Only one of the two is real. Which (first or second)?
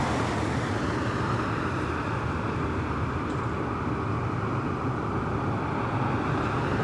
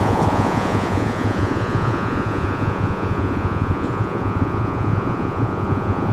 first